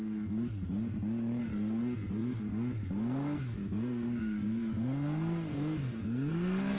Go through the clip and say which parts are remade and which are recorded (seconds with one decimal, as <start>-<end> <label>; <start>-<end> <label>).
0.0-0.9 remade; 0.9-1.4 recorded; 1.4-6.8 remade